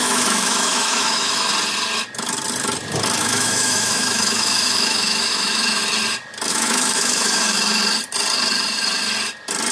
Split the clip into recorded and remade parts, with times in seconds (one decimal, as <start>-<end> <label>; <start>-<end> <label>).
0.0-1.5 remade; 1.5-3.2 recorded; 3.2-5.8 remade; 5.8-6.5 recorded; 6.5-7.8 remade; 7.8-9.7 recorded